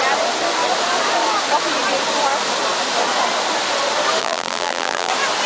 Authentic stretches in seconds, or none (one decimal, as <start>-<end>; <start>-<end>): 0.0-4.2; 5.1-5.5